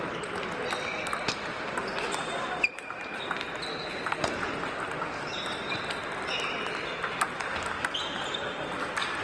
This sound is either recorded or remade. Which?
recorded